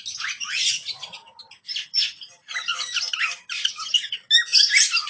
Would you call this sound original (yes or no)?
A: yes